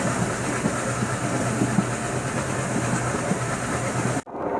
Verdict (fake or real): real